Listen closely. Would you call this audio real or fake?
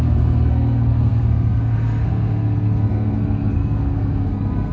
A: fake